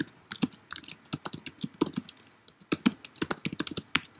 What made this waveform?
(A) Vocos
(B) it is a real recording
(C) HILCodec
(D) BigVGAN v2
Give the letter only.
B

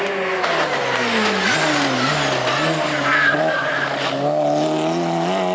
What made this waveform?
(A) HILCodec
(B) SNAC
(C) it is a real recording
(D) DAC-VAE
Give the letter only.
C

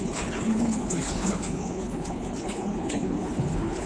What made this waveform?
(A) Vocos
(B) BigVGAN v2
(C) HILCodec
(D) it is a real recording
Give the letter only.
C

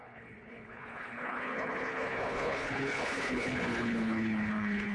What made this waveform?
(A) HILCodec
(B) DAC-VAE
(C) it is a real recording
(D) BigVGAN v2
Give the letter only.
A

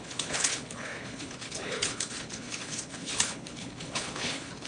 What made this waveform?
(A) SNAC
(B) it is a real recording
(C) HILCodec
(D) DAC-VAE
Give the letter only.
C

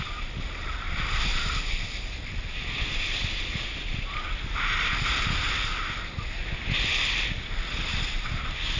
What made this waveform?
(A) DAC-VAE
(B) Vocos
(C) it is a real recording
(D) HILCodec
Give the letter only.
C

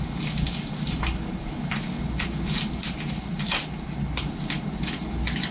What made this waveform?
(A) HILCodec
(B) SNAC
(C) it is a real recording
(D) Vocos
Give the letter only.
C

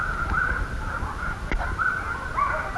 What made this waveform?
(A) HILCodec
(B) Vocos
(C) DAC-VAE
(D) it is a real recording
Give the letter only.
D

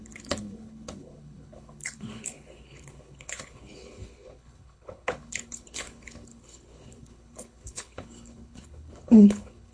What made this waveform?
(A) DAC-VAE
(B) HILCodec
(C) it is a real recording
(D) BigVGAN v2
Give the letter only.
B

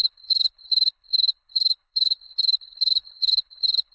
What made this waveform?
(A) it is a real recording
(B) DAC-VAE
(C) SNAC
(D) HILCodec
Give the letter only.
D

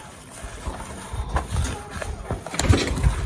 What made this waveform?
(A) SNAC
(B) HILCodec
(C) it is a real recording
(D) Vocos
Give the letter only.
C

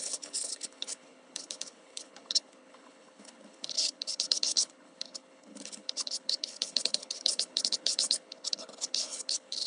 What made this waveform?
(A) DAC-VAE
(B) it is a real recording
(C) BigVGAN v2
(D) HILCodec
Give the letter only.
D